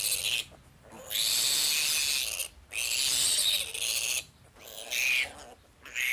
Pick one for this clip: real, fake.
real